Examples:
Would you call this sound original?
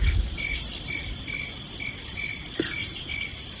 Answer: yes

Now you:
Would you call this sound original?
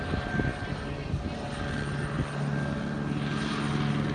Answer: yes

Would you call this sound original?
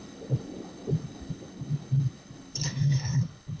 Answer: no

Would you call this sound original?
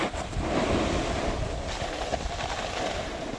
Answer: yes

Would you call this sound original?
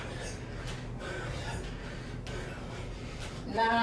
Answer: yes